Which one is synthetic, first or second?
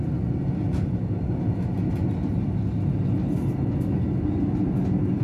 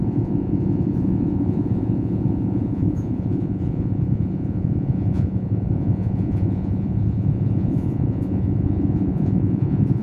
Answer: second